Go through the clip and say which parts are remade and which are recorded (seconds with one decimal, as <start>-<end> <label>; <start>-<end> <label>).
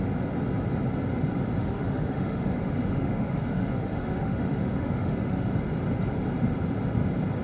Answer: 0.0-1.6 recorded; 1.6-5.5 remade; 5.5-7.4 recorded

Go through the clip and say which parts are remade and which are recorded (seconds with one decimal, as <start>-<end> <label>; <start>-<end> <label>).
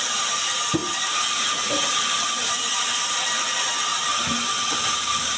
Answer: 0.0-5.4 recorded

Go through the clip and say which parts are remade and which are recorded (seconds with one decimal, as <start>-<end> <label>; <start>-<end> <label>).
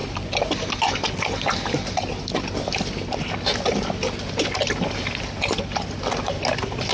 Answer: 0.0-6.9 recorded